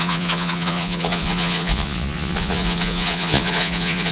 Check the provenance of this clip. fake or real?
fake